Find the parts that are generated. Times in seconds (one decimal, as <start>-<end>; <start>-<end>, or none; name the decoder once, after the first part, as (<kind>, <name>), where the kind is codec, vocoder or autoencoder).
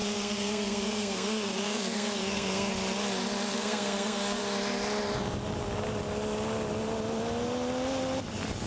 0.0-2.7 (codec, SNAC); 3.5-4.4